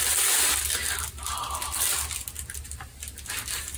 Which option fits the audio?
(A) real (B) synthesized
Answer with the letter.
A